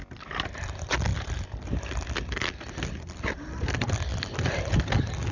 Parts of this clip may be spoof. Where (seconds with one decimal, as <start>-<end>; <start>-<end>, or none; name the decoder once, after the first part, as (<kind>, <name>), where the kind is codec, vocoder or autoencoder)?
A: none